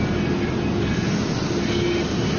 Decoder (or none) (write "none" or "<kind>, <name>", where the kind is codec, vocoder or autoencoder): none